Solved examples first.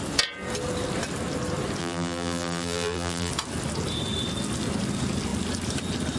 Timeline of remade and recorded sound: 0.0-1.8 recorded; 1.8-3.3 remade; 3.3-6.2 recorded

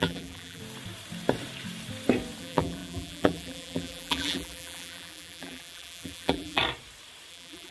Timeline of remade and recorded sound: 0.0-0.6 remade; 0.6-2.4 recorded; 2.4-6.6 remade; 6.6-7.3 recorded; 7.3-7.7 remade

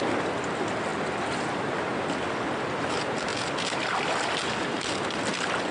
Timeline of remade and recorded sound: 0.0-0.9 remade; 0.9-2.6 recorded; 2.6-3.3 remade; 3.3-5.3 recorded; 5.3-5.7 remade

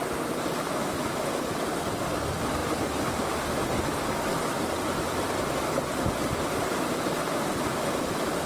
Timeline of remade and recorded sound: 0.0-2.6 recorded; 2.6-3.6 remade; 3.6-8.5 recorded

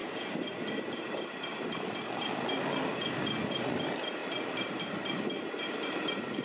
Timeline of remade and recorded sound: 0.0-6.4 remade

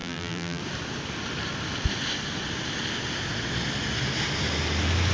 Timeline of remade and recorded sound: 0.0-0.6 remade; 0.6-5.1 recorded

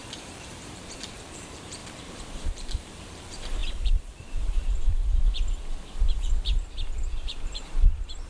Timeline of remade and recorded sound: 0.0-8.3 remade

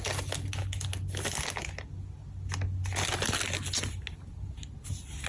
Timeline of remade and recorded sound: 0.0-5.3 recorded